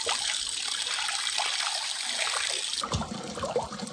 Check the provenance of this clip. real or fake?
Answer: real